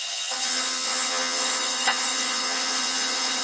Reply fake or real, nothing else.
fake